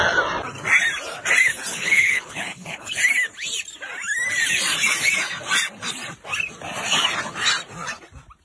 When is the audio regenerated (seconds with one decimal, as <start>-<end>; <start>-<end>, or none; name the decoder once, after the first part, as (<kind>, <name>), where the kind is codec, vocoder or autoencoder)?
1.7-3.0 (codec, HILCodec)